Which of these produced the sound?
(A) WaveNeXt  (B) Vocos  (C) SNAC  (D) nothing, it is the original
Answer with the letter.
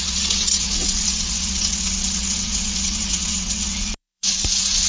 A